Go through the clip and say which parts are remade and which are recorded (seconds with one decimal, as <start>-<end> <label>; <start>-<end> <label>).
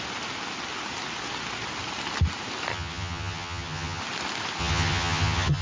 0.0-2.7 recorded; 2.7-4.0 remade; 4.0-4.6 recorded; 4.6-5.6 remade